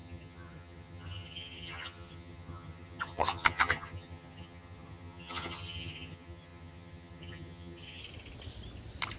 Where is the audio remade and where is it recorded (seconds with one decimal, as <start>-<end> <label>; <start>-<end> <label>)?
0.0-8.0 remade; 8.0-9.2 recorded